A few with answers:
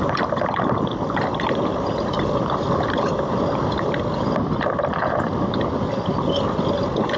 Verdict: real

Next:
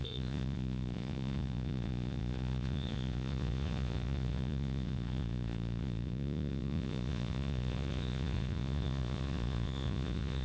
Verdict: fake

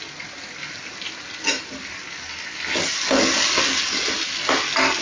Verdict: real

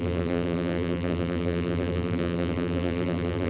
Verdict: fake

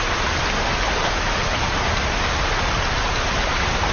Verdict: real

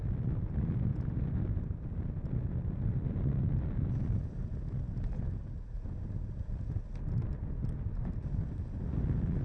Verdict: real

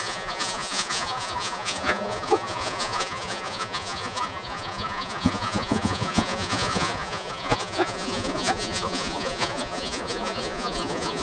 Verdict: fake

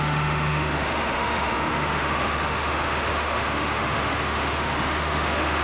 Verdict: fake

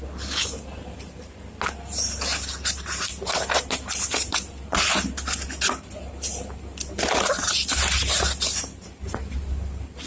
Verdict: real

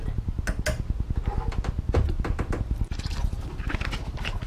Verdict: real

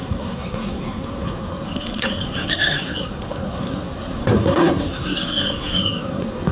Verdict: fake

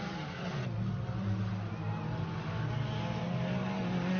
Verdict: real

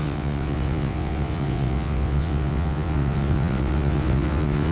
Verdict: fake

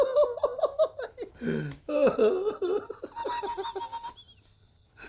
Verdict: real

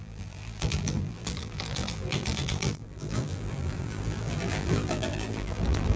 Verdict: fake